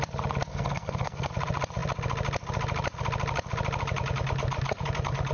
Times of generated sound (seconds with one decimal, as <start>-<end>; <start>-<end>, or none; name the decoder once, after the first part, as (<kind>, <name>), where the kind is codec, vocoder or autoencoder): 0.5-1.3 (codec, SNAC)